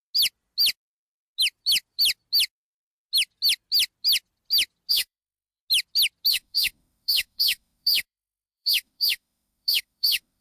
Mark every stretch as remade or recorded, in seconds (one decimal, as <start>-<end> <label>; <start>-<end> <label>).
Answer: 0.0-4.9 recorded; 4.9-5.6 remade; 5.6-6.3 recorded; 6.3-10.4 remade